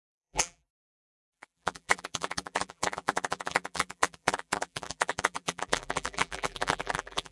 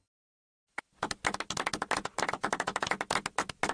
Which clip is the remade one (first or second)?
first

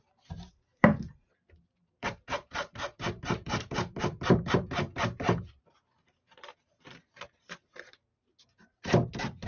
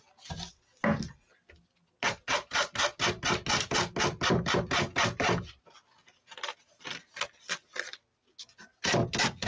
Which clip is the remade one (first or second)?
first